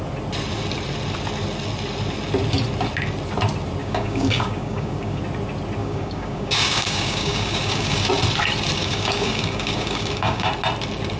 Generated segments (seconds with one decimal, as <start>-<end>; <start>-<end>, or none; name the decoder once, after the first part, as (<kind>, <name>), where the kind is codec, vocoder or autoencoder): 3.8-5.2 (codec, DAC); 5.8-8.1; 8.8-10.5